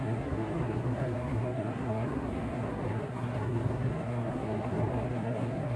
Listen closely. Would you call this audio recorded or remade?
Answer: remade